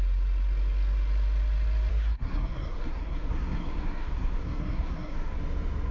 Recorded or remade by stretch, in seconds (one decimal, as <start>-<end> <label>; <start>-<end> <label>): 0.0-1.9 recorded; 1.9-5.4 remade; 5.4-5.9 recorded